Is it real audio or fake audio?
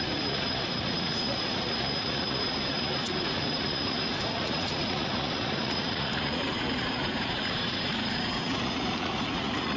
fake